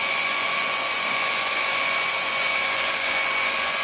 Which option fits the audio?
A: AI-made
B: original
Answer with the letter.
A